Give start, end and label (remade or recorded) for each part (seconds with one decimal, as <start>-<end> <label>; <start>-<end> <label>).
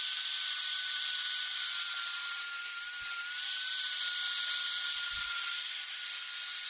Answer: 0.0-6.7 recorded